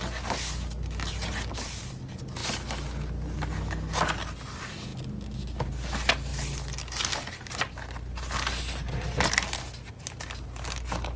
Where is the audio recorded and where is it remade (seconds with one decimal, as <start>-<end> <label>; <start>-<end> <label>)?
0.0-11.2 recorded